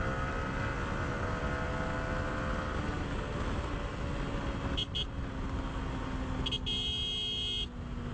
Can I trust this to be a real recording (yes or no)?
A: yes